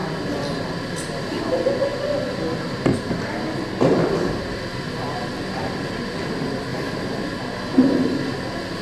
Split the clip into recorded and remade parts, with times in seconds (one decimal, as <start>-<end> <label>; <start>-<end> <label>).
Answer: 0.0-6.7 recorded; 6.7-7.2 remade; 7.2-8.8 recorded